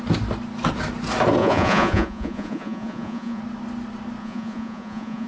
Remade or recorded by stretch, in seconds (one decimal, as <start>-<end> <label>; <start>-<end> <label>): 0.0-1.4 recorded; 1.4-3.4 remade; 3.4-4.2 recorded; 4.2-5.3 remade